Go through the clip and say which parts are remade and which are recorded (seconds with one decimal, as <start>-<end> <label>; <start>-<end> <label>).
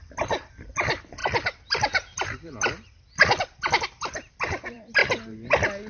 0.0-5.0 remade; 5.0-5.9 recorded